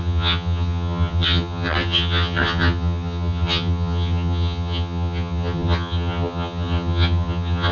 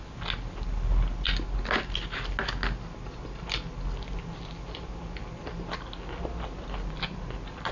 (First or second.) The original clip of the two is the second